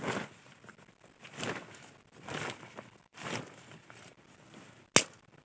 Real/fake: real